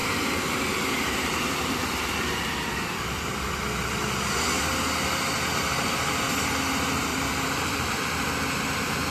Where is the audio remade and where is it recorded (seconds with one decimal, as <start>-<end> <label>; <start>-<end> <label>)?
0.0-4.6 remade; 4.6-7.1 recorded; 7.1-7.9 remade; 7.9-9.1 recorded